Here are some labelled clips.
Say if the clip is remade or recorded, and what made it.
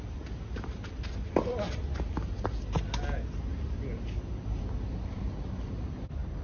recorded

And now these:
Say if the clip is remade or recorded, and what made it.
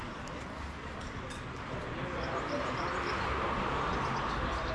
recorded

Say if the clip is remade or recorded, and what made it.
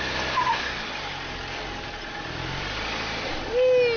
recorded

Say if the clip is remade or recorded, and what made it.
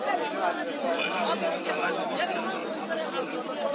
recorded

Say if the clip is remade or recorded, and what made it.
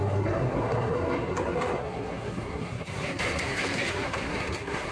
remade, codec, SNAC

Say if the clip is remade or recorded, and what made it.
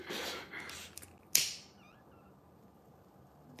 recorded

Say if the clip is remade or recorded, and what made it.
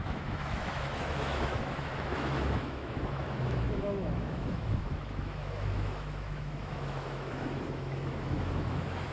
remade, autoencoder, DAC-VAE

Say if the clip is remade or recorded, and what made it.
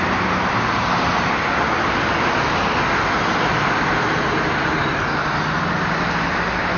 recorded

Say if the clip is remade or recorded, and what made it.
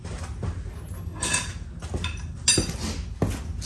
recorded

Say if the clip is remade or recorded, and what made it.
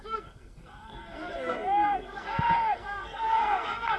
remade, codec, SNAC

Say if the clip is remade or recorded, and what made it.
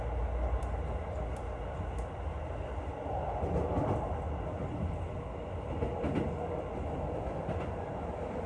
recorded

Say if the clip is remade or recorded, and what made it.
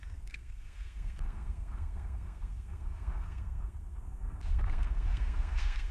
remade, codec, SNAC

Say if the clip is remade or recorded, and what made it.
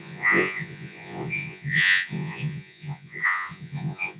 remade, vocoder, Vocos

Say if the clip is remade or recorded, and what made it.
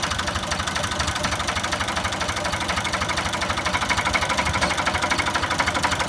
recorded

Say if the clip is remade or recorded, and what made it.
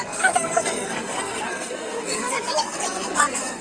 remade, codec, SNAC